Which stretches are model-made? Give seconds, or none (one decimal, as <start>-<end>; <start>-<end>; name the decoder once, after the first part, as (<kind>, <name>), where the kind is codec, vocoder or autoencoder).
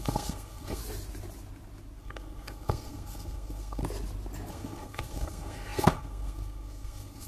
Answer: 0.0-0.8 (codec, SNAC); 2.0-3.8; 4.5-7.3